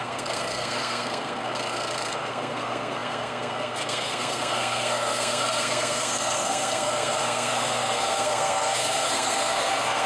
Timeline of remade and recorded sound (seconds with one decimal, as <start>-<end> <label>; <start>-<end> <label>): 0.0-10.1 remade